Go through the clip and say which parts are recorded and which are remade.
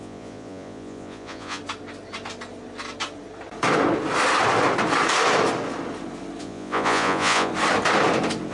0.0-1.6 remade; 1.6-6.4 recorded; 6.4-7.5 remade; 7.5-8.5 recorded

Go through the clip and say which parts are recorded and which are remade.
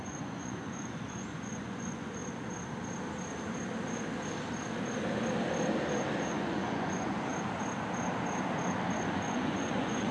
0.0-2.2 remade; 2.2-6.2 recorded; 6.2-7.3 remade; 7.3-9.0 recorded; 9.0-10.1 remade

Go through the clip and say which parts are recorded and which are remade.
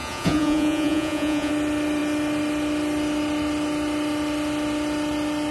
0.0-1.5 remade; 1.5-5.5 recorded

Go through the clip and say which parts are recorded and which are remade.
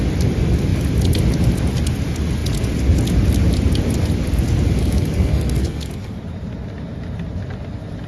0.0-4.8 recorded; 4.8-6.2 remade; 6.2-8.1 recorded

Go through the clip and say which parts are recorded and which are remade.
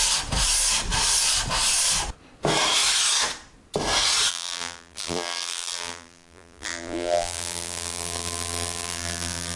0.0-4.3 recorded; 4.3-9.6 remade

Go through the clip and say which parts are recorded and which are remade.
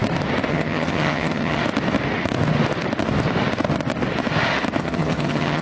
0.0-0.5 recorded; 0.5-1.6 remade; 1.6-4.8 recorded; 4.8-5.6 remade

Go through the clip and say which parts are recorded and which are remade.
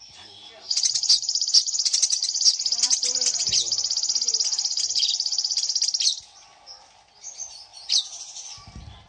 0.0-9.1 recorded